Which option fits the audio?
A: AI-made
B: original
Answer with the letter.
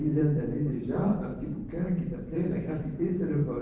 A